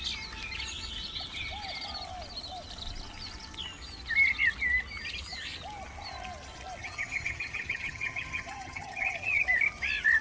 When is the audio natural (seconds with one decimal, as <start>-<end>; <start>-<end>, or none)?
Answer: 0.0-6.8; 9.4-10.2